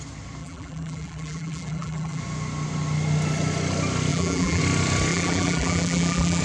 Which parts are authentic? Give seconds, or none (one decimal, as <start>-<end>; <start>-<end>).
0.0-0.4; 2.2-4.1; 4.6-5.1